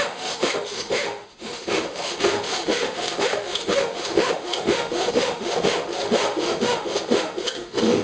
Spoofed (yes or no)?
yes